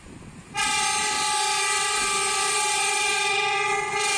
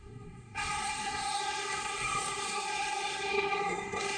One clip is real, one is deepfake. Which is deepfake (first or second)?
second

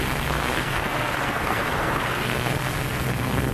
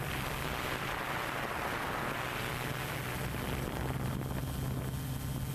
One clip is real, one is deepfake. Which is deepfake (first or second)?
first